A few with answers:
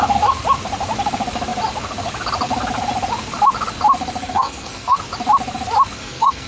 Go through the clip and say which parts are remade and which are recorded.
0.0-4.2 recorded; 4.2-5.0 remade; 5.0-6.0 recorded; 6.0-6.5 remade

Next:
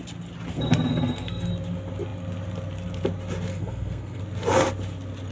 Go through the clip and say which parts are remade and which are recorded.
0.0-0.5 recorded; 0.5-1.5 remade; 1.5-3.5 recorded; 3.5-4.2 remade; 4.2-5.3 recorded

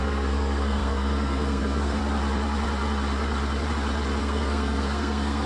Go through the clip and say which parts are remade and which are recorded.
0.0-2.0 remade; 2.0-4.2 recorded; 4.2-5.5 remade